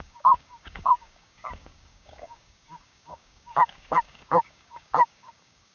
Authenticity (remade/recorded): remade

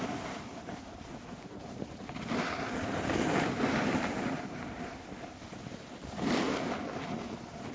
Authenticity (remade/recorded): recorded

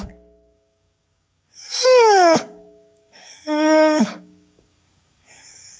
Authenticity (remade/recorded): remade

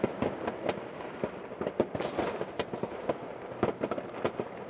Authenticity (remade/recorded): recorded